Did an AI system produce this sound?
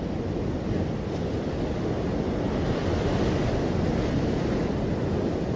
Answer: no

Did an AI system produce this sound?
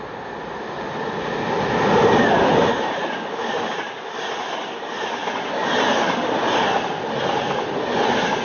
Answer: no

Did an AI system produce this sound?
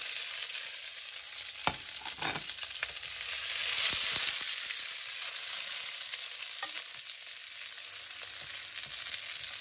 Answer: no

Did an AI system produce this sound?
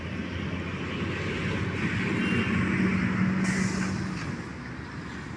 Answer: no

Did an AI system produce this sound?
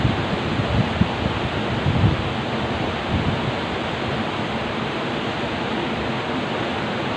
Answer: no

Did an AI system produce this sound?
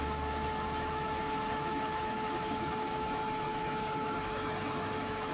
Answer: yes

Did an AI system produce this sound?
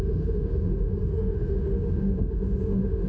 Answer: yes